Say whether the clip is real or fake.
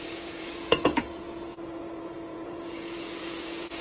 fake